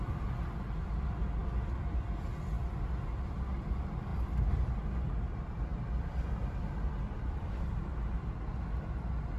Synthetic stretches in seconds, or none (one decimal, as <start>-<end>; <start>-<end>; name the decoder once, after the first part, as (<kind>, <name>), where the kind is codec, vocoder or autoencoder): none